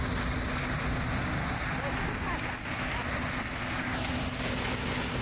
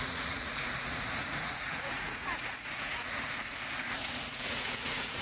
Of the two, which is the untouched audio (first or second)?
first